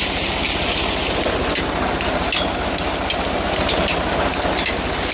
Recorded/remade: recorded